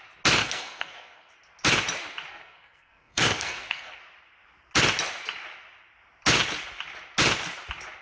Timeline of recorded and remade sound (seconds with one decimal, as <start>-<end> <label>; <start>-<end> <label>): 0.0-0.4 recorded; 0.4-1.3 remade; 1.3-2.3 recorded; 2.3-4.0 remade; 4.0-8.0 recorded